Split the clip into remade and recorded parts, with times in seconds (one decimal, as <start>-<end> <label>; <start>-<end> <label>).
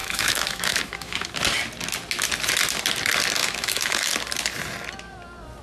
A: 0.0-1.3 remade; 1.3-3.4 recorded; 3.4-4.1 remade; 4.1-5.6 recorded